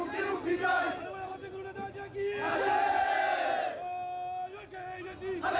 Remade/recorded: recorded